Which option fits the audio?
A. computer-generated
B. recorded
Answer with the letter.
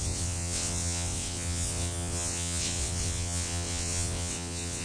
A